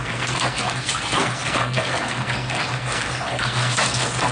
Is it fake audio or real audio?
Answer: fake